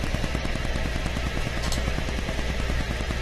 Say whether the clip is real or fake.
real